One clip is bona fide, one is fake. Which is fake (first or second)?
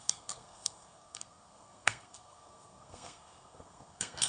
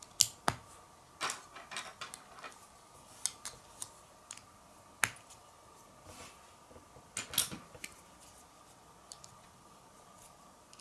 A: first